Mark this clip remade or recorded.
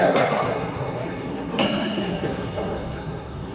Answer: remade